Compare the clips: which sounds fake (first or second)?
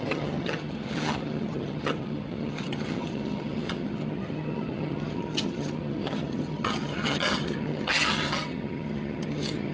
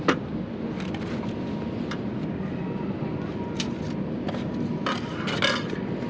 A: first